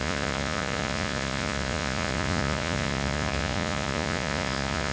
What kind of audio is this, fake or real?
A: fake